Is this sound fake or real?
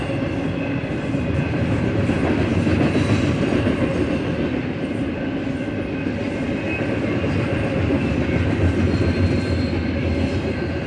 real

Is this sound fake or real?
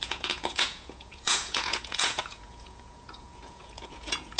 fake